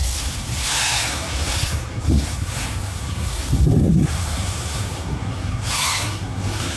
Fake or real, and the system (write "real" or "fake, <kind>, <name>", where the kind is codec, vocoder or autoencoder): fake, codec, SNAC